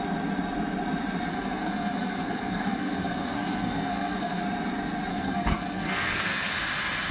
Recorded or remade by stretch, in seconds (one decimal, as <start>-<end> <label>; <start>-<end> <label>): 0.0-1.3 recorded; 1.3-4.4 remade; 4.4-5.1 recorded; 5.1-6.5 remade; 6.5-7.1 recorded